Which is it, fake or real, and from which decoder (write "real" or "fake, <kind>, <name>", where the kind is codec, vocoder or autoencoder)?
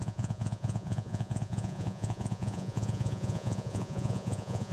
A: fake, vocoder, Vocos